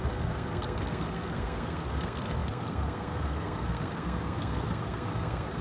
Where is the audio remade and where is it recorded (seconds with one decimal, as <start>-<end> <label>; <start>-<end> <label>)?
0.0-5.6 remade